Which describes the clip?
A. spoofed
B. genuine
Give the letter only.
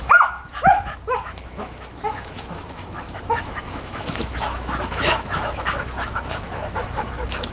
A